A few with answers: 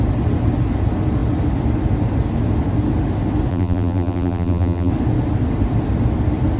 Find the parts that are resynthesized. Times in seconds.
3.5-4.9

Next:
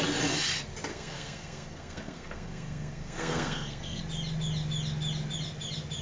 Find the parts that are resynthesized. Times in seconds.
0.9-4.0

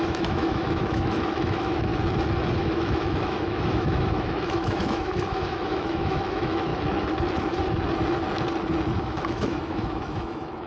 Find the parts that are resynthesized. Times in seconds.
0.0-1.9; 2.5-6.7; 9.0-10.7